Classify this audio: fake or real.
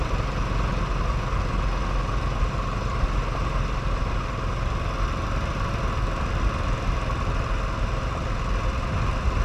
real